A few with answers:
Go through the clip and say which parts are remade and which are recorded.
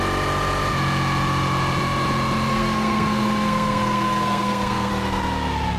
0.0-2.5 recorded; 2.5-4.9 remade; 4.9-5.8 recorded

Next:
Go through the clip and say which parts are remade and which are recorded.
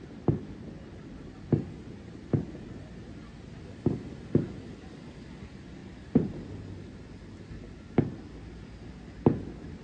0.0-9.8 recorded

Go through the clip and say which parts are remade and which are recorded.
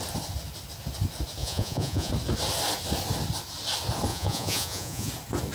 0.0-1.4 recorded; 1.4-2.1 remade; 2.1-4.1 recorded; 4.1-5.1 remade; 5.1-5.5 recorded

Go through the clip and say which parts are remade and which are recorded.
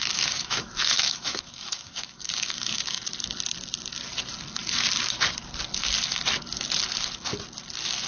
0.0-3.0 remade; 3.0-8.1 recorded